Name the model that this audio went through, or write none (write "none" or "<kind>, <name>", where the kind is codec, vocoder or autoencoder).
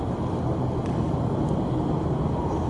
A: none